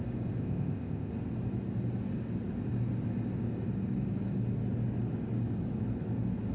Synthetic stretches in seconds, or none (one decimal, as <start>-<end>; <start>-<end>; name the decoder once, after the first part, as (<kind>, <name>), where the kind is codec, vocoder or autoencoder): 0.4-1.1 (codec, ZipCodec)